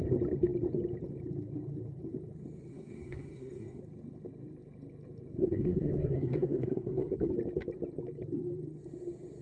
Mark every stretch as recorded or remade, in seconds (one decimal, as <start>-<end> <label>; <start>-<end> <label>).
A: 0.0-2.7 recorded; 2.7-3.8 remade; 3.8-5.4 recorded; 5.4-7.3 remade; 7.3-9.4 recorded